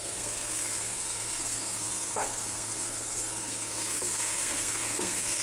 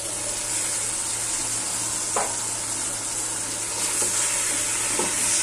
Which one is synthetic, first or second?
first